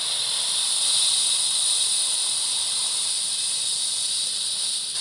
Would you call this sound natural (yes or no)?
yes